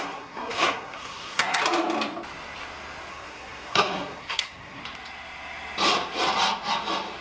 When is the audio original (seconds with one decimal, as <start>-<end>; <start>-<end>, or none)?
1.6-3.1; 4.8-7.2